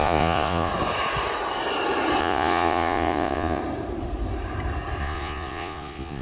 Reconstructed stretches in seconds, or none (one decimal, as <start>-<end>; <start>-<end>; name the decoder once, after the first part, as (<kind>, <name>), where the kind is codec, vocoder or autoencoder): 0.0-0.7 (vocoder, Vocos); 2.2-3.6; 5.0-6.2